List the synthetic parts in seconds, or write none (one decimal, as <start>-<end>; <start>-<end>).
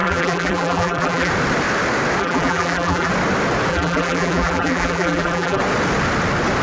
0.0-1.3; 2.2-3.1; 3.7-5.6